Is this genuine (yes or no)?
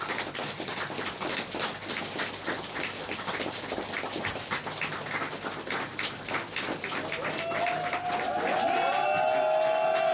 yes